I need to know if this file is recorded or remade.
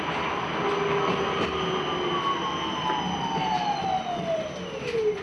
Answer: recorded